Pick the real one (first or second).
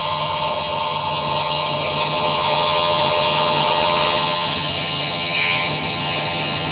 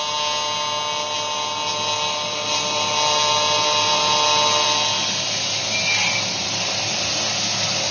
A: second